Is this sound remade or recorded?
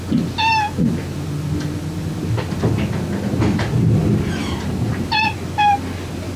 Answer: recorded